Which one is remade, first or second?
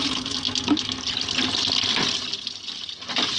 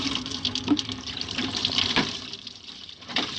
second